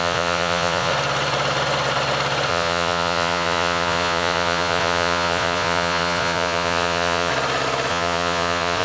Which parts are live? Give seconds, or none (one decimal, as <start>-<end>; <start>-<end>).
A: 0.9-2.5; 7.3-7.9